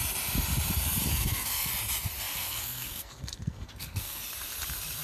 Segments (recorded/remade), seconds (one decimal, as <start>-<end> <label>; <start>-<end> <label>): 0.0-1.1 recorded; 1.1-1.7 remade; 1.7-2.3 recorded; 2.3-4.2 remade; 4.2-5.0 recorded